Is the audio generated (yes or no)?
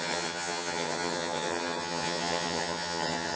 yes